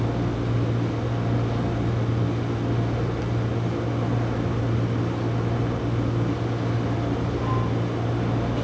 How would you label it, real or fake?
real